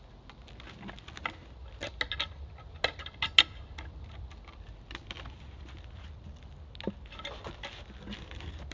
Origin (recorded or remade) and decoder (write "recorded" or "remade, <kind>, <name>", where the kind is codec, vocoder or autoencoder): recorded